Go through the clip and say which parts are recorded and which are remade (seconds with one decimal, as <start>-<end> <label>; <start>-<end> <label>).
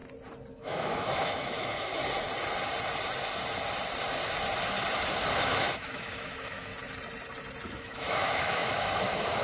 0.0-0.5 recorded; 0.5-2.0 remade; 2.0-5.3 recorded; 5.3-6.7 remade; 6.7-7.8 recorded; 7.8-9.4 remade